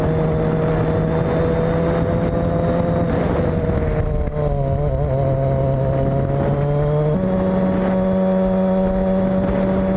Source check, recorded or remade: recorded